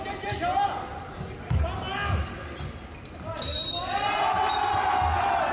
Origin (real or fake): real